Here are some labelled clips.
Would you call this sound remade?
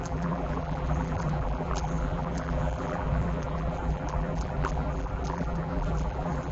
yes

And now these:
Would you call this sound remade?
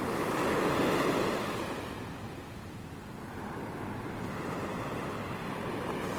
no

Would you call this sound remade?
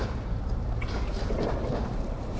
yes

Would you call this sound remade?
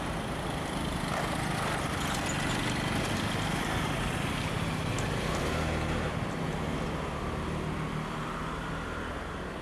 no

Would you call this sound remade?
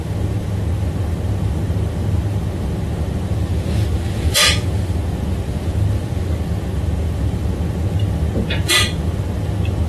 no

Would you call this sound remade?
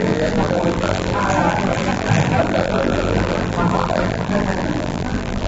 yes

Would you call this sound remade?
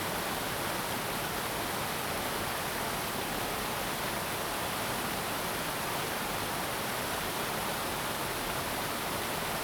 no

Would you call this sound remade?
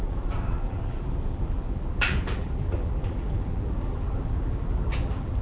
yes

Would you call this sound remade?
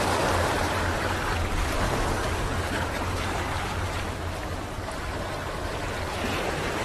yes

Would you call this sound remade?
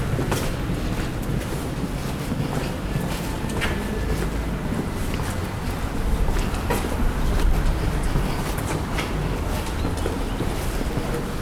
no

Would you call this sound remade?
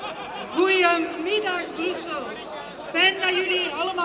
no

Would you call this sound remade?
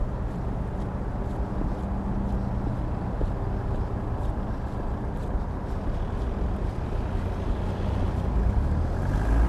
no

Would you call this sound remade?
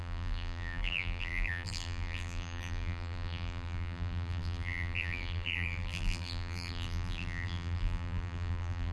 yes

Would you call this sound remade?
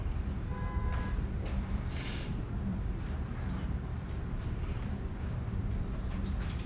yes